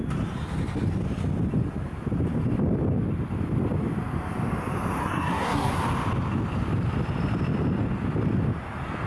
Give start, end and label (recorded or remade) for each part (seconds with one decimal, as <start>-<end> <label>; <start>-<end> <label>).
0.0-5.0 recorded; 5.0-5.8 remade; 5.8-9.1 recorded